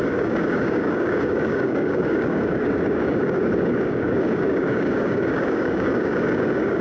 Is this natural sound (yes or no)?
no